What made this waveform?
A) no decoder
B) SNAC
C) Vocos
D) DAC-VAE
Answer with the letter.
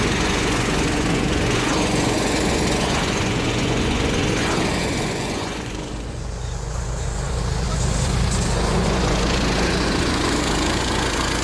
C